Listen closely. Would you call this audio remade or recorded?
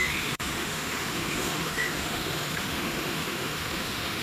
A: remade